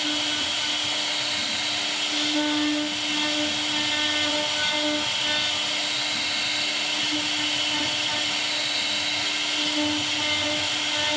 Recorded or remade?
recorded